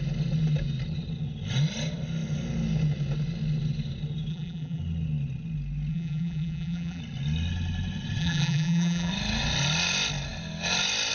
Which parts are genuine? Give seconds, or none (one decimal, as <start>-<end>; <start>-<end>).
0.0-4.3; 4.8-5.9; 7.0-8.2; 9.1-11.1